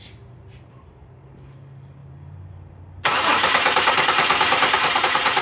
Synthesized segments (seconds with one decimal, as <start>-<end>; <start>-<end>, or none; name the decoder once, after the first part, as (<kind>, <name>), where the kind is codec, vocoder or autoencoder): 0.0-5.4 (vocoder, BigVGAN v2)